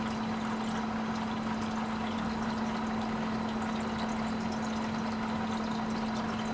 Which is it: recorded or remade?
recorded